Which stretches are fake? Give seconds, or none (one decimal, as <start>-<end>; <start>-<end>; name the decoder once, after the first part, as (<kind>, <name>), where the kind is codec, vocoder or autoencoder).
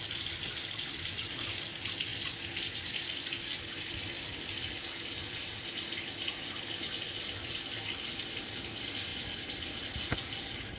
none